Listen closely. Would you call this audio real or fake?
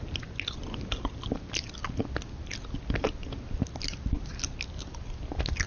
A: real